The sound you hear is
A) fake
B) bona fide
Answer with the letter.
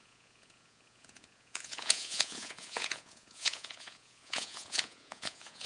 A